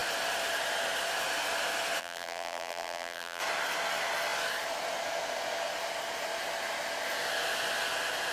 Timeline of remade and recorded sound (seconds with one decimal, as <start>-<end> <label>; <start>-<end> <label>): 0.0-2.0 recorded; 2.0-3.4 remade; 3.4-8.3 recorded

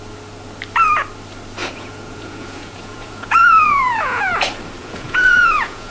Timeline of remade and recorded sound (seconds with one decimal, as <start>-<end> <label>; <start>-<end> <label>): 0.0-1.6 recorded; 1.6-4.3 remade; 4.3-4.8 recorded; 4.8-5.9 remade

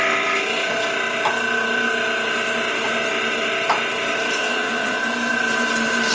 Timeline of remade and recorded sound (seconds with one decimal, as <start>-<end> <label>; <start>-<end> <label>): 0.0-4.4 recorded; 4.4-5.0 remade; 5.0-6.1 recorded

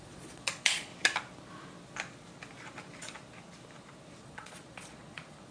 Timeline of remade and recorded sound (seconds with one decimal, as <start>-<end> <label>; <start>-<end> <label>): 0.0-0.9 remade; 0.9-4.2 recorded; 4.2-5.5 remade